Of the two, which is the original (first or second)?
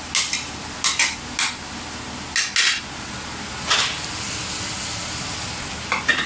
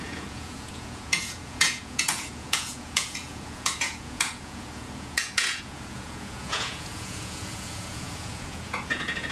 first